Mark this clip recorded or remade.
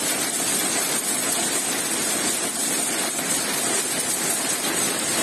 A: recorded